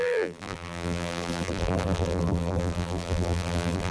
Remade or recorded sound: remade